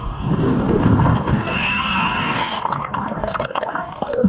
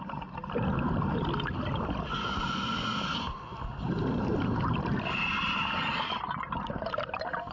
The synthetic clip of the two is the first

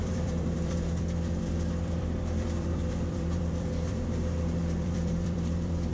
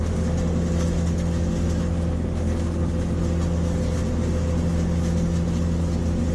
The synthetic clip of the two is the first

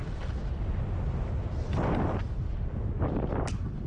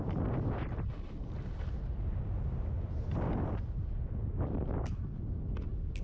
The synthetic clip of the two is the first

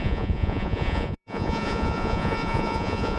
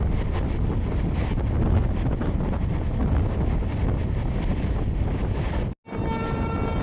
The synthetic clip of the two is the first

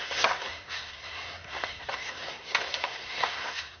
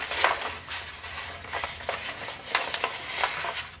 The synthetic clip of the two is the first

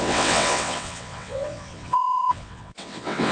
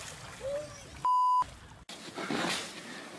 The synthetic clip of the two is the first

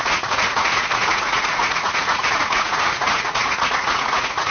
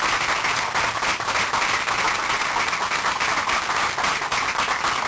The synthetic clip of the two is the first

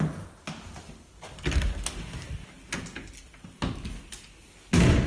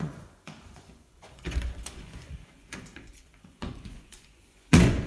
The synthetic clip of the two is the second